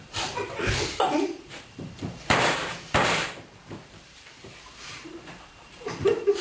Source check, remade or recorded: remade